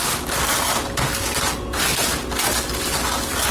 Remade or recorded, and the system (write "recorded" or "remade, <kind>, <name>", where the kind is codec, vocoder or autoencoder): recorded